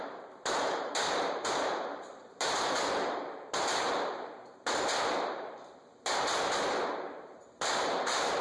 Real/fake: fake